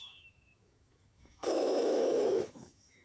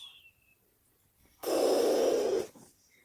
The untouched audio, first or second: second